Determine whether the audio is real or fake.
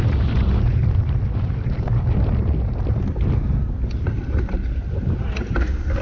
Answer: real